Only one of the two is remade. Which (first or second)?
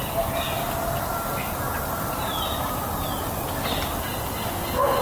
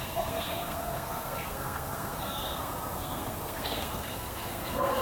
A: second